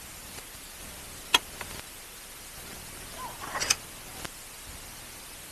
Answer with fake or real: real